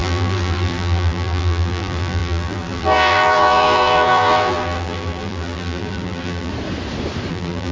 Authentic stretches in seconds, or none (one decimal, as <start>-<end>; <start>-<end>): 6.5-7.3